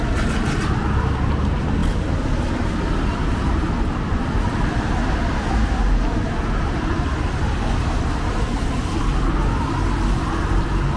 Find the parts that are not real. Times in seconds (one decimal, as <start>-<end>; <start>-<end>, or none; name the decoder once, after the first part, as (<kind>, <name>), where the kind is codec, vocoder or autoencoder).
none